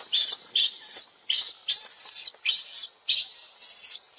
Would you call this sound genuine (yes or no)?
yes